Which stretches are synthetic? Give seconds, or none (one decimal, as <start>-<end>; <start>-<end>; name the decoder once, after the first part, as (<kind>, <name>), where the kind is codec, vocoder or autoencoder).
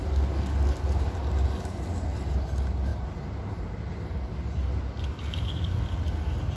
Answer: none